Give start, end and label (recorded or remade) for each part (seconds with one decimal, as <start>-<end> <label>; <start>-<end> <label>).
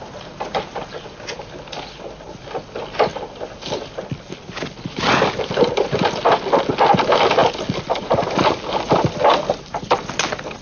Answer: 0.0-10.6 recorded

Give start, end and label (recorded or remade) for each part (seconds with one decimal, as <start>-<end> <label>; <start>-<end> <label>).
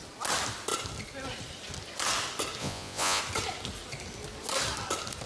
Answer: 0.0-2.6 recorded; 2.6-3.2 remade; 3.2-5.3 recorded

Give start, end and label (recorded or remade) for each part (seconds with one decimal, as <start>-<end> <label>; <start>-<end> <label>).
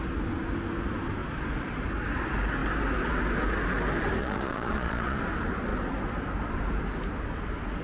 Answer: 0.0-4.2 recorded; 4.2-5.2 remade; 5.2-7.8 recorded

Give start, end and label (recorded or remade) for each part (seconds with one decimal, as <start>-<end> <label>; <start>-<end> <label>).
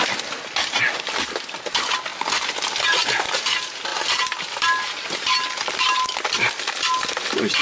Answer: 0.0-7.6 recorded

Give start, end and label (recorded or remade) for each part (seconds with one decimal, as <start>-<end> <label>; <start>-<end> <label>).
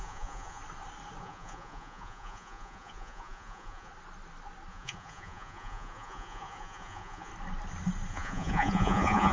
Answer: 0.0-0.6 remade; 0.6-1.2 recorded; 1.2-3.9 remade; 3.9-4.7 recorded; 4.7-7.3 remade; 7.3-8.1 recorded; 8.1-9.3 remade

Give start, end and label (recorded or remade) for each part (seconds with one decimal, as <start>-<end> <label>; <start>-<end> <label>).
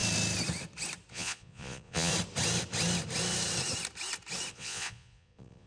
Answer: 0.0-1.1 recorded; 1.1-2.1 remade; 2.1-4.5 recorded; 4.5-5.7 remade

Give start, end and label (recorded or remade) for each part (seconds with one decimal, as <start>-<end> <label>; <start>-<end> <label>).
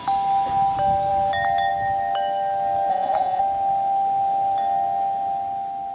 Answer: 0.0-2.9 recorded; 2.9-3.4 remade; 3.4-5.9 recorded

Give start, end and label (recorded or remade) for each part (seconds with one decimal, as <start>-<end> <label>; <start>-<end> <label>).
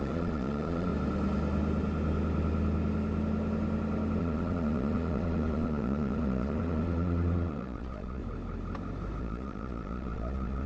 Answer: 0.0-0.9 remade; 0.9-4.2 recorded; 4.2-8.2 remade; 8.2-9.2 recorded; 9.2-10.7 remade